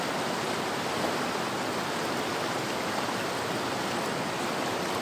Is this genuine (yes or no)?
yes